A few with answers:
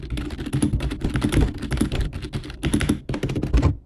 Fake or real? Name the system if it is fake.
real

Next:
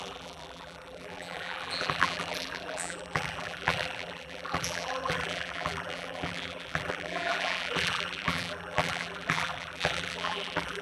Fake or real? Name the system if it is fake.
fake, vocoder, BigVGAN v2